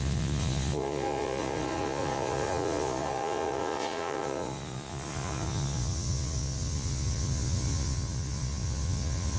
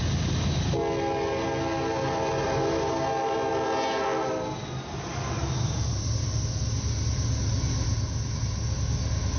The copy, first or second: first